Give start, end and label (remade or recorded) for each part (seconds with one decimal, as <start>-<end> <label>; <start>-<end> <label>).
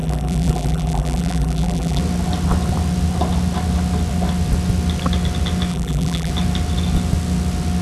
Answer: 0.0-2.0 remade; 2.0-5.7 recorded; 5.7-6.3 remade; 6.3-7.8 recorded